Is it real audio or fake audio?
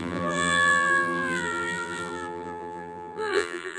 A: fake